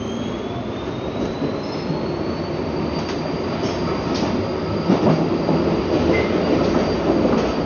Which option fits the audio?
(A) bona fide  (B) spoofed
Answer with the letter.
A